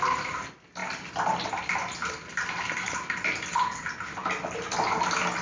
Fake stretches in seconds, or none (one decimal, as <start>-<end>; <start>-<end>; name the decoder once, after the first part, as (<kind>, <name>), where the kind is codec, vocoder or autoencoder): none

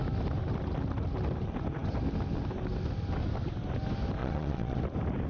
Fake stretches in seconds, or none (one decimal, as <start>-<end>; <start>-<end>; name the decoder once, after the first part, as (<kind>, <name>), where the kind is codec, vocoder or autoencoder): 4.2-4.8 (vocoder, Vocos)